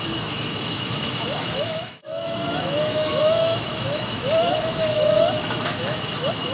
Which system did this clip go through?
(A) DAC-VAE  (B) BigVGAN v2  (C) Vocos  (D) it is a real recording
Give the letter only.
A